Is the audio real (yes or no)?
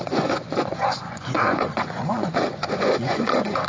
no